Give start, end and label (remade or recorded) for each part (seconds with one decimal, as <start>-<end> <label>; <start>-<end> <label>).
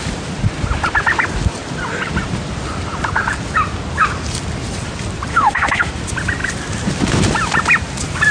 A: 0.0-5.3 recorded; 5.3-5.9 remade; 5.9-8.3 recorded